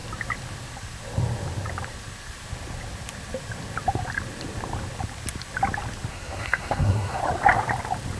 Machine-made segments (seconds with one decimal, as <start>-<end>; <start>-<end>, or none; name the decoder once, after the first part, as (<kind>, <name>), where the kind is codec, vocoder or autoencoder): 6.1-7.2 (codec, SNAC)